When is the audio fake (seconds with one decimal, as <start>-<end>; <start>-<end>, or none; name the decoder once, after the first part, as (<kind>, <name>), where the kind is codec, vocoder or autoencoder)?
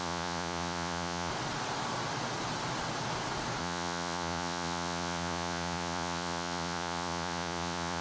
0.0-1.3 (vocoder, Vocos); 3.6-8.0